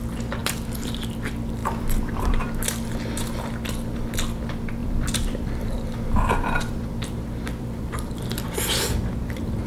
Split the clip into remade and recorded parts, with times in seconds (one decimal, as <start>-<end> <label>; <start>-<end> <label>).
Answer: 0.0-0.4 recorded; 0.4-1.1 remade; 1.1-1.6 recorded; 1.6-4.0 remade; 4.0-4.8 recorded; 4.8-8.1 remade; 8.1-9.7 recorded